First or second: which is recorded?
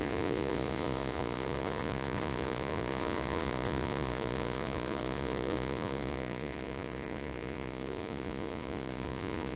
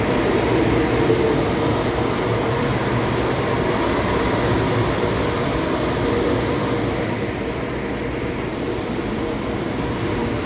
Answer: second